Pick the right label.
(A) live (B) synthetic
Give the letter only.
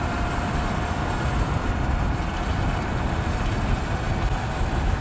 A